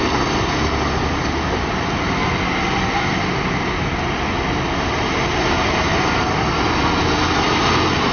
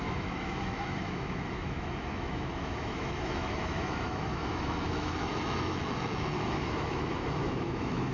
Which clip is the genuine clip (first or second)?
first